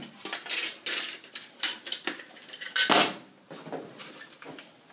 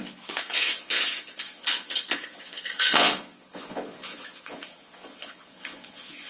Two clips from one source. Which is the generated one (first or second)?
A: second